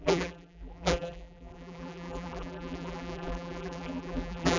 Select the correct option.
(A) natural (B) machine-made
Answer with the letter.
B